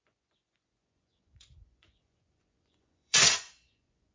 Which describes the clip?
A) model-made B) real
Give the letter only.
A